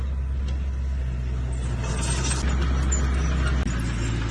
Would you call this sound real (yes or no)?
yes